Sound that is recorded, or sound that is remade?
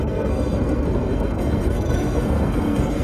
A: remade